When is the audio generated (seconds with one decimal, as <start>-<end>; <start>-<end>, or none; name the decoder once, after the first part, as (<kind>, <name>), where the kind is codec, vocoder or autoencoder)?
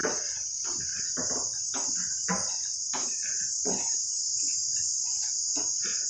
1.5-5.2 (vocoder, BigVGAN v2)